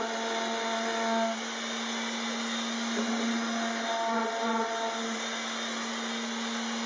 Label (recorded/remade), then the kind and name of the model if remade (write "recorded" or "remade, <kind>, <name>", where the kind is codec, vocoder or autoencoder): recorded